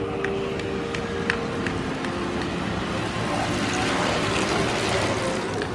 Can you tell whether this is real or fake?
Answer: real